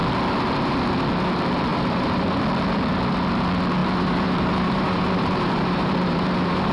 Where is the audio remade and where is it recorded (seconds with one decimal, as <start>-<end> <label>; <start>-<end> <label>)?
0.0-1.7 recorded; 1.7-2.3 remade; 2.3-3.8 recorded; 3.8-6.7 remade